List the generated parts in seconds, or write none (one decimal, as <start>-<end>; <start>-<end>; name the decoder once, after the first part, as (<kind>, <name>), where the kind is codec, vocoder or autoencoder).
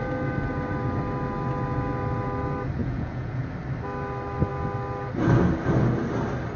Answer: 2.8-3.5 (vocoder, Vocos)